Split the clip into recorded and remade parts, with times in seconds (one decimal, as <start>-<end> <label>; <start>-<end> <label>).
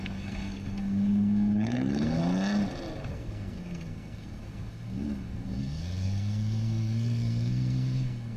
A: 0.0-2.2 remade; 2.2-3.1 recorded; 3.1-8.4 remade